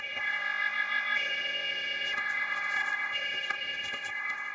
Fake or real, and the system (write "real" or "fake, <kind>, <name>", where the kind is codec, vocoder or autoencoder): fake, codec, ZipCodec